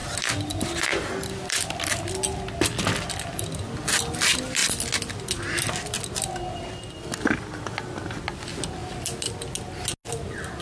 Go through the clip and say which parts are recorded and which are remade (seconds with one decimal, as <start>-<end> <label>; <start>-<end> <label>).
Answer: 0.0-10.6 recorded